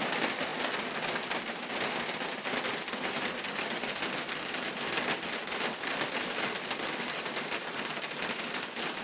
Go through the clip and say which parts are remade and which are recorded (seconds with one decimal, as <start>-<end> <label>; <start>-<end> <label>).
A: 0.0-9.0 recorded